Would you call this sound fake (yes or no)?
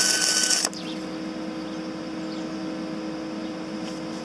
no